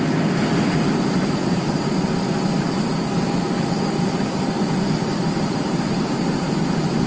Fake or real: real